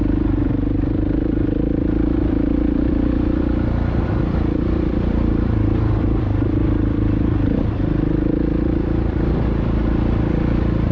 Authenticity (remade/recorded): remade